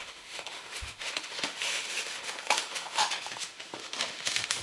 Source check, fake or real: fake